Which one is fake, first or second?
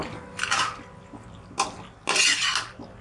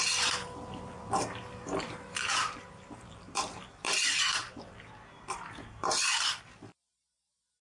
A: second